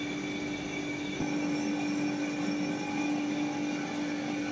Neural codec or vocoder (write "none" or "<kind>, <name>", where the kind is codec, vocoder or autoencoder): none